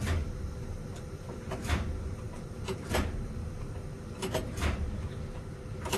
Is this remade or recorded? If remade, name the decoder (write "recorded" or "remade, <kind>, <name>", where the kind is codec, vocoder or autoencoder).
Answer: remade, vocoder, BigVGAN v2